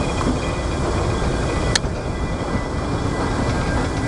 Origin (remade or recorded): recorded